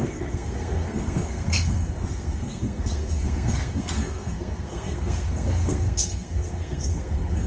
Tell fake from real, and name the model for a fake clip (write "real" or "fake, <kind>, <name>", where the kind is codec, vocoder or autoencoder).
fake, codec, SNAC